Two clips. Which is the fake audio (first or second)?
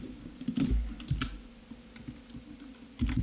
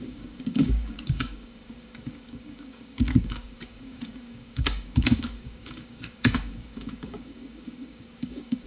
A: second